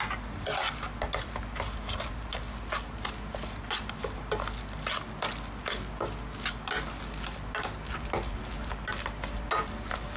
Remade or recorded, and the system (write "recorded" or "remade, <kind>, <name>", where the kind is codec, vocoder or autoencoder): recorded